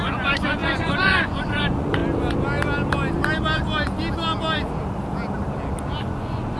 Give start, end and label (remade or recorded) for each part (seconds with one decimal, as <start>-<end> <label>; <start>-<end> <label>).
0.0-2.0 remade; 2.0-6.0 recorded; 6.0-6.6 remade